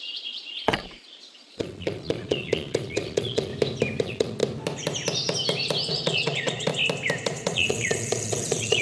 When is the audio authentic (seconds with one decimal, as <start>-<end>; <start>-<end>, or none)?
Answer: 3.5-4.0; 4.4-5.9; 6.7-7.2